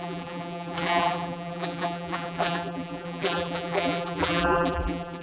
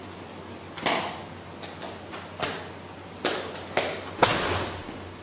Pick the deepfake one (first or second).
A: first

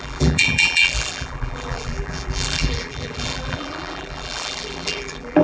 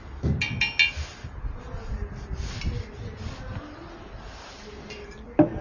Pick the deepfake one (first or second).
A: first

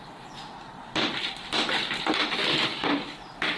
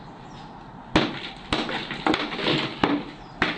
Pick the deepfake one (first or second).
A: first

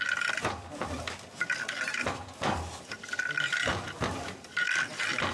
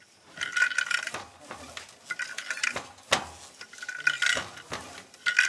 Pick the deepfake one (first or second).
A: first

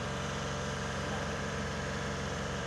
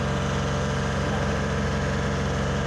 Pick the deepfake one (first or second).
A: first